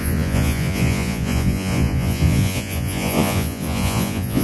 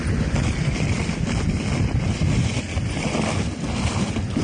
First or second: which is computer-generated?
first